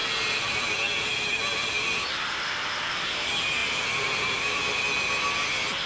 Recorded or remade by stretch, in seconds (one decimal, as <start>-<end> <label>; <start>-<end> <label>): 0.0-3.2 remade; 3.2-3.6 recorded; 3.6-4.8 remade; 4.8-5.9 recorded